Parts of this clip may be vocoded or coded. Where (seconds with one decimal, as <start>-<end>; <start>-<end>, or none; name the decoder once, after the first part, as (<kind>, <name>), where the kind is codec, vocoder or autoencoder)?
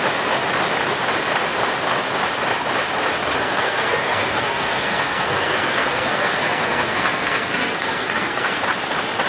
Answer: 3.4-8.6 (codec, SNAC)